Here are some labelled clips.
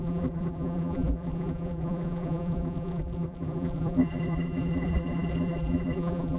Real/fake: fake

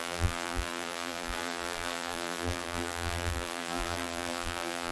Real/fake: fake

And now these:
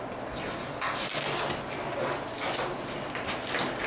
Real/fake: real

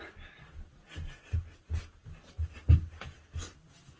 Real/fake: real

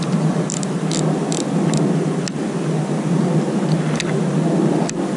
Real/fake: real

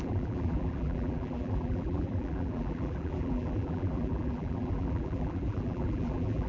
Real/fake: fake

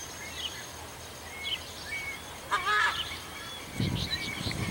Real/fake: fake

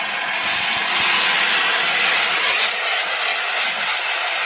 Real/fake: real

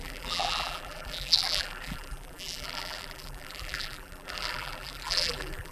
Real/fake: fake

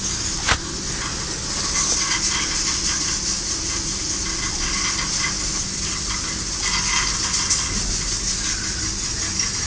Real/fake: real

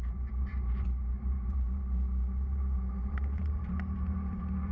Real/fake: fake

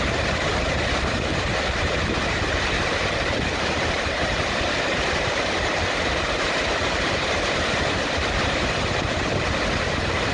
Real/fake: fake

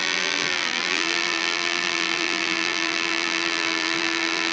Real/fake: fake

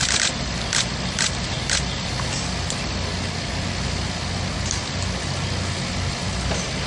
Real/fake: real